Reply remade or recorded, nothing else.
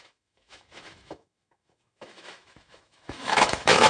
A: remade